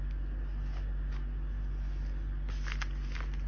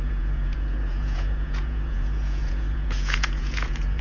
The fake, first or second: second